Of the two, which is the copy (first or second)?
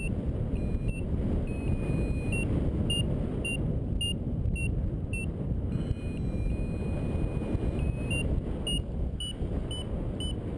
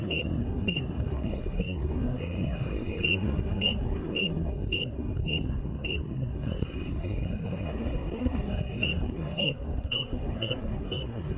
second